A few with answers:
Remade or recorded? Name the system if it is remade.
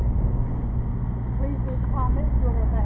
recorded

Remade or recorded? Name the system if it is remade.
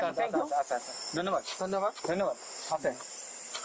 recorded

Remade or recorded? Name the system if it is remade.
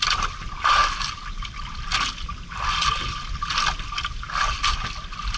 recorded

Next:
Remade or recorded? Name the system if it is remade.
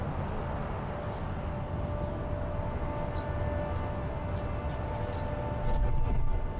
recorded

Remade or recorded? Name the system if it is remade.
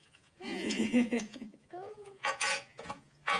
remade, vocoder, Vocos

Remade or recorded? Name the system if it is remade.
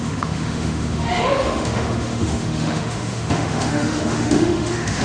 remade, autoencoder, DAC-VAE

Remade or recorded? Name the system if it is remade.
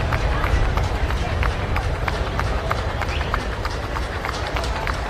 remade, vocoder, BigVGAN v2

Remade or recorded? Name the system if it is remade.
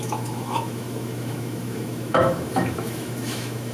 remade, autoencoder, DAC-VAE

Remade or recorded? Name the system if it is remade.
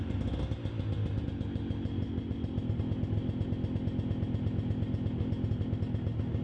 recorded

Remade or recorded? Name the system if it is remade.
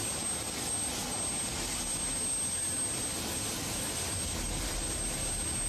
recorded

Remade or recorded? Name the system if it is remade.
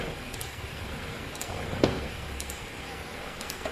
remade, codec, SNAC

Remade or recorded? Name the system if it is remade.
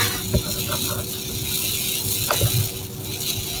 recorded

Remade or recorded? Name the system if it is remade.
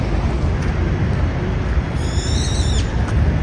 recorded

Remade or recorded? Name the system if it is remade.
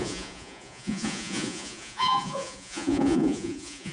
remade, vocoder, Vocos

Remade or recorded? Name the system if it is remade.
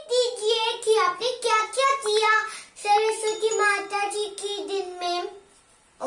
recorded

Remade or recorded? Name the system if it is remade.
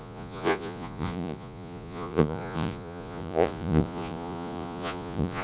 remade, vocoder, Vocos